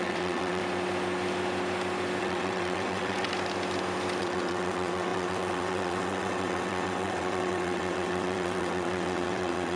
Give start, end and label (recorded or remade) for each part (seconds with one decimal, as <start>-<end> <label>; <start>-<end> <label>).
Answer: 0.0-0.6 remade; 0.6-2.2 recorded; 2.2-3.3 remade; 3.3-4.2 recorded; 4.2-9.8 remade